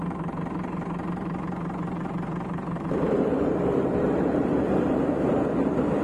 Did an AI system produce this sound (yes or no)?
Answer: yes